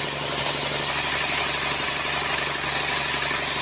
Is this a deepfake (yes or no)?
no